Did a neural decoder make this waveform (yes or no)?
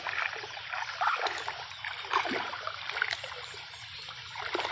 no